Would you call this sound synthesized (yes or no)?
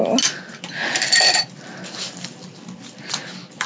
no